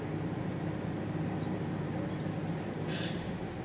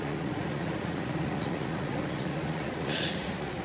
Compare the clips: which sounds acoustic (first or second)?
first